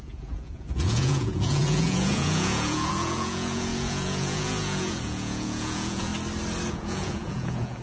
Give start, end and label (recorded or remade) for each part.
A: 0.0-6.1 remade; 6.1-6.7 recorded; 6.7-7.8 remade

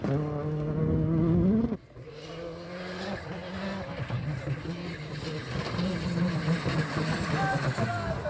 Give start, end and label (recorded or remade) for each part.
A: 0.0-8.3 recorded